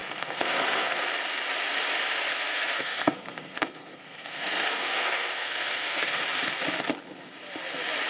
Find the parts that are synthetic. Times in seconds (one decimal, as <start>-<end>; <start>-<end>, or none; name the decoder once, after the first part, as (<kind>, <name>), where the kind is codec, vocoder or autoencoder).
0.0-1.0 (codec, SNAC); 2.3-6.2